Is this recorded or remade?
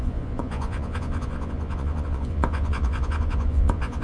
remade